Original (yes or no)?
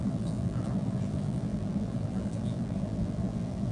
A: no